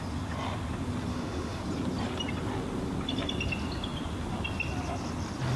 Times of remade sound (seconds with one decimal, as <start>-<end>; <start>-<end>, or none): 1.1-1.6